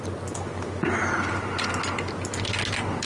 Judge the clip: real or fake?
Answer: real